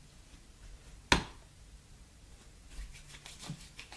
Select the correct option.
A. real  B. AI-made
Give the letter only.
A